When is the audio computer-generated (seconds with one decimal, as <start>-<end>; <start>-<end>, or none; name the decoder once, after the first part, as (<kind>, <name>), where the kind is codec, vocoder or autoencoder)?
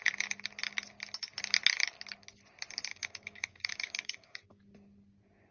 2.9-4.6 (codec, DAC)